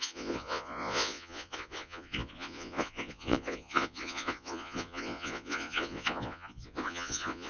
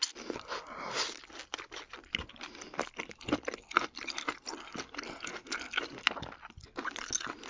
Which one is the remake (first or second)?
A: first